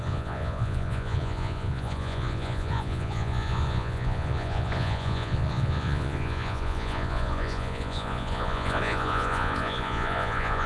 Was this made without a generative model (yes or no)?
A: no